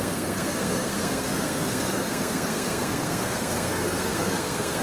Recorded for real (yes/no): no